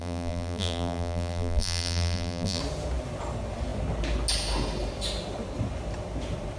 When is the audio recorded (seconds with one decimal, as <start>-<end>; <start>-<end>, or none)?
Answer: 2.6-6.6